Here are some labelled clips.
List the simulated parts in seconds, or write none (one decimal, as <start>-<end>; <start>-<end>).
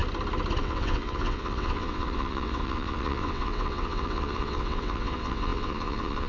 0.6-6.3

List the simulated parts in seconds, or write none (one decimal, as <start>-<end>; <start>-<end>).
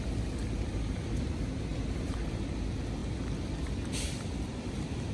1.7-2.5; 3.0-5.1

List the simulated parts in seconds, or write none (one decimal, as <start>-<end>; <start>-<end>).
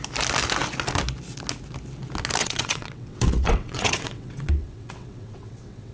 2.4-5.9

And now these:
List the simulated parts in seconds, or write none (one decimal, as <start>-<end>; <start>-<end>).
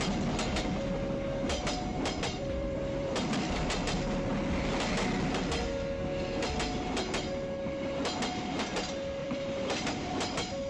1.9-3.6; 9.2-10.1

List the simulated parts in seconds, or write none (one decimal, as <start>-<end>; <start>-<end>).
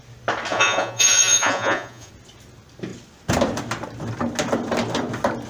0.5-2.1